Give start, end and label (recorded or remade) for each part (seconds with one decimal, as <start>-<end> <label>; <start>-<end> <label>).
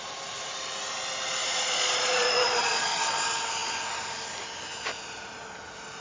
0.0-1.4 recorded; 1.4-3.2 remade; 3.2-6.0 recorded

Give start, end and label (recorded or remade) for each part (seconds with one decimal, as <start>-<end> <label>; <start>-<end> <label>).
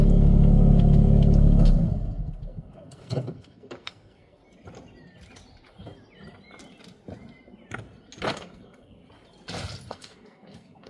0.0-4.4 remade; 4.4-8.3 recorded; 8.3-9.0 remade; 9.0-9.9 recorded; 9.9-10.9 remade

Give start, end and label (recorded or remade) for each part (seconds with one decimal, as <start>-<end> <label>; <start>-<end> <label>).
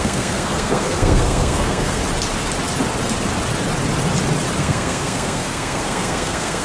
0.0-2.0 remade; 2.0-4.6 recorded; 4.6-6.6 remade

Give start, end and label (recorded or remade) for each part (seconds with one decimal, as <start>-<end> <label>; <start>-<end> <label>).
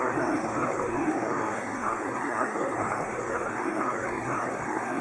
0.0-5.0 remade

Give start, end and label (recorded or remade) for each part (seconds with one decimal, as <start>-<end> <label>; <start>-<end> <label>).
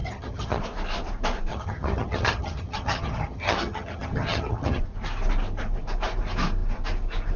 0.0-0.6 remade; 0.6-1.5 recorded; 1.5-4.8 remade; 4.8-7.4 recorded